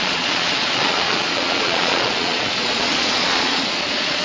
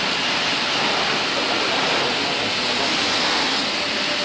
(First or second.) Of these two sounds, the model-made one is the first